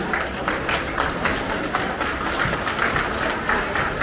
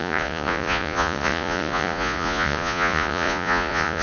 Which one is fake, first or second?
second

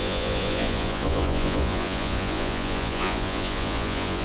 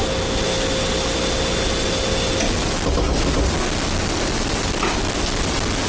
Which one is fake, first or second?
first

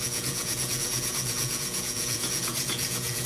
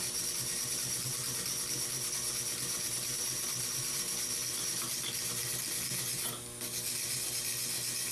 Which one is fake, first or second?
first